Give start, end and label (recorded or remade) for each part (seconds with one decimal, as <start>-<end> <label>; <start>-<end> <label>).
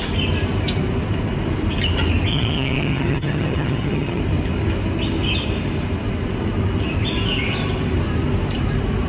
0.0-2.3 recorded; 2.3-4.2 remade; 4.2-9.1 recorded